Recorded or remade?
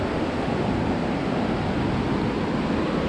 recorded